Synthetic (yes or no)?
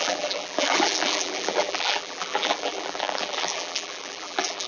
yes